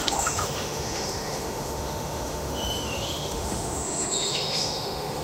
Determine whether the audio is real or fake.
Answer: fake